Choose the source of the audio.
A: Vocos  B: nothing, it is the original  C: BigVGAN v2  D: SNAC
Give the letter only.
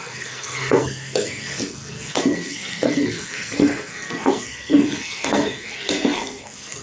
D